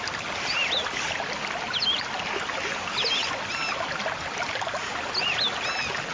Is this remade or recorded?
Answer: recorded